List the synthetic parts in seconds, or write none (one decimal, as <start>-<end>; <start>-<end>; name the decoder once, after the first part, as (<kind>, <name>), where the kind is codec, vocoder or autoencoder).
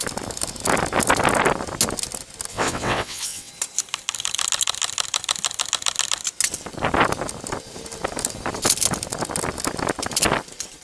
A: 2.5-3.5 (vocoder, WaveNeXt)